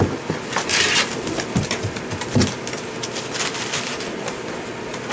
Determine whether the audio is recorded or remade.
remade